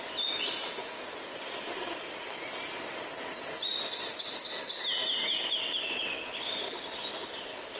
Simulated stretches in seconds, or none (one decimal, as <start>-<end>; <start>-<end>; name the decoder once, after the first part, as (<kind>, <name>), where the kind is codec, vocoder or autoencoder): none